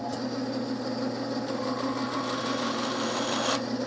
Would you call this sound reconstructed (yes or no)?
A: no